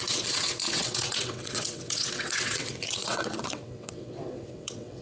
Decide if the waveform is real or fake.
fake